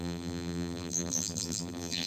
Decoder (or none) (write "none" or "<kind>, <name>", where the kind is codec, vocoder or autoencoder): vocoder, BigVGAN v2